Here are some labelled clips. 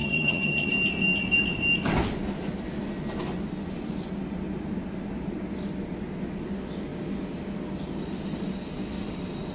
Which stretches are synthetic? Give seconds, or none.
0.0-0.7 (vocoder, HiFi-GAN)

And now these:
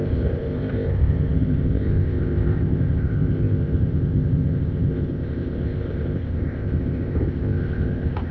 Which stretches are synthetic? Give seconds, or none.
0.0-8.3 (codec, ZipCodec)

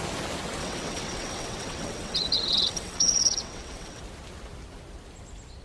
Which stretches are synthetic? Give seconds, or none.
0.6-4.0 (vocoder, WaveNeXt)